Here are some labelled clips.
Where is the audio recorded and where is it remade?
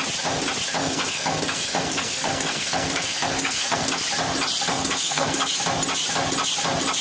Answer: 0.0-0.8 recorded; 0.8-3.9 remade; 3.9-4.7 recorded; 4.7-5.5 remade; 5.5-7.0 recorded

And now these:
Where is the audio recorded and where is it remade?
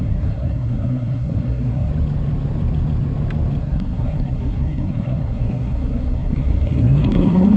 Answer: 0.0-1.9 remade; 1.9-3.6 recorded; 3.6-7.6 remade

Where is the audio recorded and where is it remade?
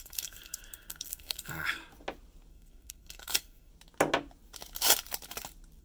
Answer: 0.0-1.8 remade; 1.8-2.5 recorded; 2.5-3.7 remade; 3.7-5.8 recorded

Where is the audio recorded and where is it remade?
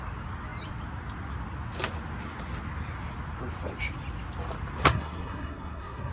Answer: 0.0-4.8 recorded; 4.8-6.1 remade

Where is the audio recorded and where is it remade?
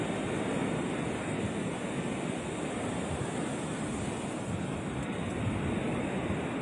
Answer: 0.0-6.6 recorded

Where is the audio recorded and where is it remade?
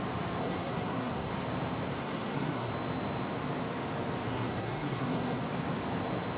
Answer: 0.0-0.4 recorded; 0.4-1.3 remade; 1.3-2.0 recorded; 2.0-2.7 remade; 2.7-4.3 recorded; 4.3-5.4 remade; 5.4-6.4 recorded